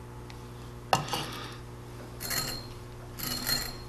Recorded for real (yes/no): yes